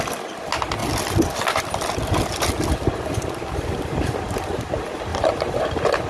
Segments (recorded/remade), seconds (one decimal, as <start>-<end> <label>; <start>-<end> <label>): 0.0-6.1 recorded